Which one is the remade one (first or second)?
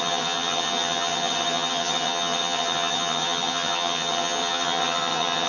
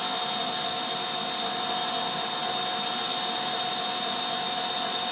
first